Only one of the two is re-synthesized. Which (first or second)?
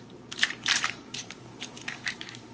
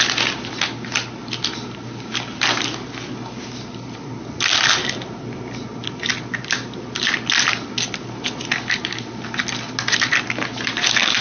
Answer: first